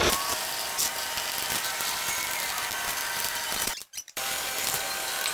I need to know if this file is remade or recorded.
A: remade